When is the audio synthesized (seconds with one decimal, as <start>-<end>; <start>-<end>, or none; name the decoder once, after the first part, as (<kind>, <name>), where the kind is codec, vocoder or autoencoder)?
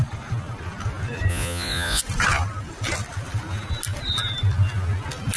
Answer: 1.3-2.0 (vocoder, Vocos)